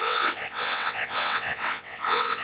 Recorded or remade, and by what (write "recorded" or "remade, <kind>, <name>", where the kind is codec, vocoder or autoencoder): remade, vocoder, WaveNeXt